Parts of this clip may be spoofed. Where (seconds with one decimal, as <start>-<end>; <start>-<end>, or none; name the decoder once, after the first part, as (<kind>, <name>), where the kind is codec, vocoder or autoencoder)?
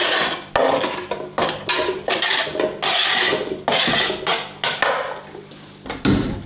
none